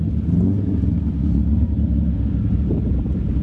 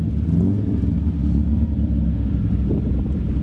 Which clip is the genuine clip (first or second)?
second